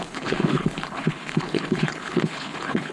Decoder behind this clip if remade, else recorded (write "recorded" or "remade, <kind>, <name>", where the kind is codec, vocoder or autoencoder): remade, codec, HILCodec